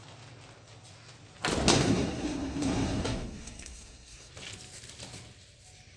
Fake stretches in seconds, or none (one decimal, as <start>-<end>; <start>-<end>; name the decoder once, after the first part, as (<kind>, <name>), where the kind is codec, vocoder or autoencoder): 1.7-4.3 (codec, SNAC)